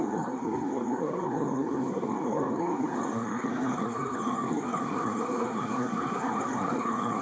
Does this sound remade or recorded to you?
remade